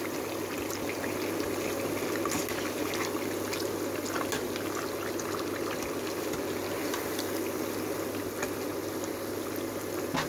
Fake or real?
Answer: real